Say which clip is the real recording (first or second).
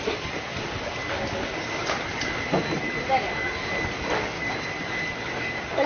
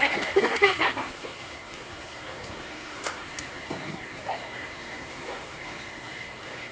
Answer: first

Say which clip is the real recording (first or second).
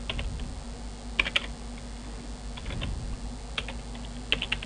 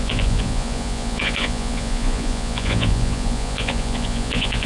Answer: first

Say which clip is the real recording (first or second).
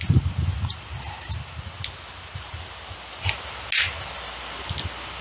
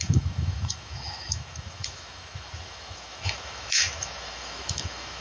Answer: first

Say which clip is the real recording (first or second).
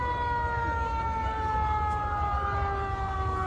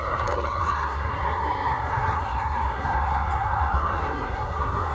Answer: first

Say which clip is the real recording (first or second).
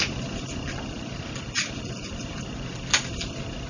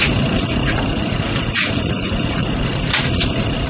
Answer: first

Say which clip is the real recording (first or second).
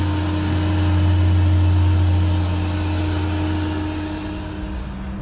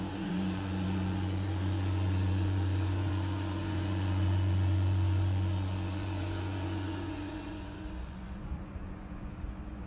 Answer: first